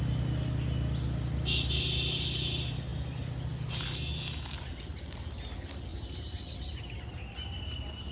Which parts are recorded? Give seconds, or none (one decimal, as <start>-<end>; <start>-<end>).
0.0-5.9; 6.8-8.1

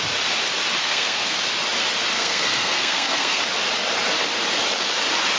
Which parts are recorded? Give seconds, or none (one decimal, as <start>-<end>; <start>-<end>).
0.0-0.8; 1.4-2.1; 3.4-5.4

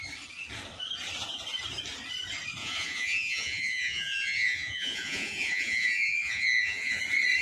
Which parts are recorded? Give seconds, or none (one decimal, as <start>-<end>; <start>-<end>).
0.0-2.6; 7.0-7.4

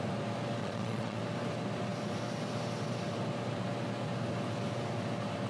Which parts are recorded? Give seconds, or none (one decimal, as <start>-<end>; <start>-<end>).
0.0-0.6; 1.2-5.5

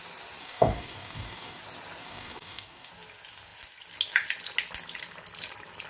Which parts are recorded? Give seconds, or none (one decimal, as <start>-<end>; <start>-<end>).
0.0-0.4; 1.6-2.0; 2.9-5.9